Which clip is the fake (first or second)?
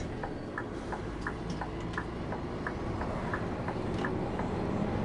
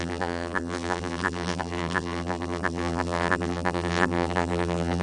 second